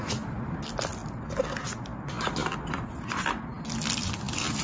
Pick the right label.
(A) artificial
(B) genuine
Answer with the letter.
B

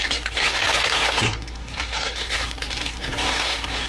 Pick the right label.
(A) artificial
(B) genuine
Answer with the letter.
A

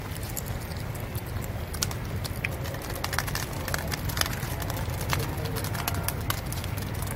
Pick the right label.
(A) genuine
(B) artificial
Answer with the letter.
A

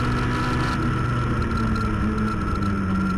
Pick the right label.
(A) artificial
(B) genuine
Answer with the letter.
B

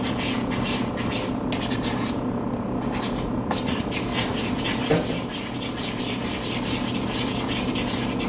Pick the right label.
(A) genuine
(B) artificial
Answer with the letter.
A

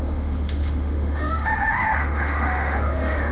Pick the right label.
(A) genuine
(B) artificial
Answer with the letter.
B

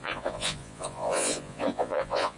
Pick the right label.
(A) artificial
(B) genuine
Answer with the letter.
A